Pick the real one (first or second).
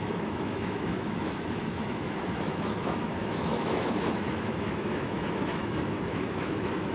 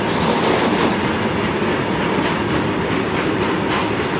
second